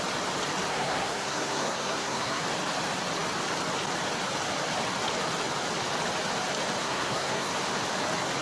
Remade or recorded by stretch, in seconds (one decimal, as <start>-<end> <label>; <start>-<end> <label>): 0.0-0.7 recorded; 0.7-2.4 remade; 2.4-6.8 recorded; 6.8-7.5 remade; 7.5-8.4 recorded